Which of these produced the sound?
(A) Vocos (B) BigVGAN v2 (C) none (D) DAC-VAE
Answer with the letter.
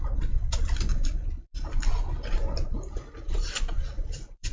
B